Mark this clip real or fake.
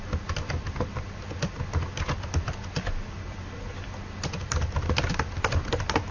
real